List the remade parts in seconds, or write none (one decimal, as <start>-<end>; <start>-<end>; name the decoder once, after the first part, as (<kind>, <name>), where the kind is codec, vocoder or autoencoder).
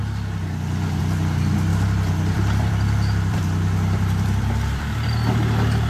1.7-5.2 (vocoder, BigVGAN v2)